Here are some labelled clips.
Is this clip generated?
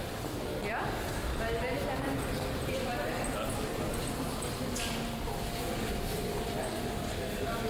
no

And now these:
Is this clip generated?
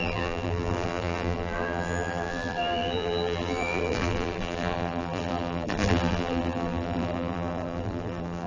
yes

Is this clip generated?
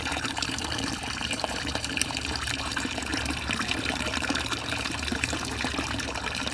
yes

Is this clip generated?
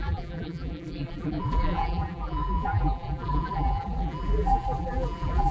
yes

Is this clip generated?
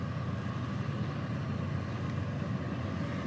no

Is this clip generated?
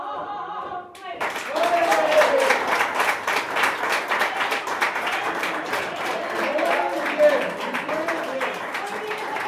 yes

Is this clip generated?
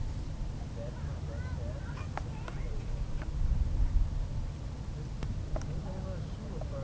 no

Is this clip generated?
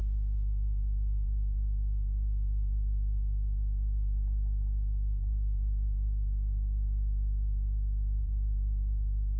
yes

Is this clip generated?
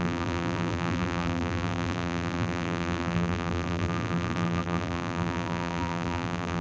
yes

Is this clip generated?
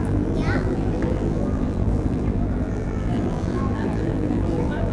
yes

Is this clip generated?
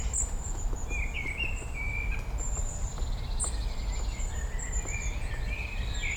yes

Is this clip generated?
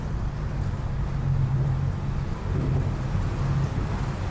no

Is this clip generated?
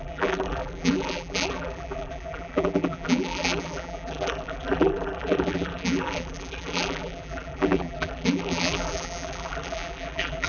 yes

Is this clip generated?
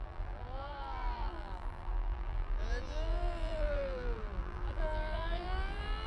yes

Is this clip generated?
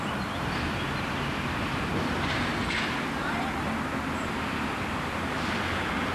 no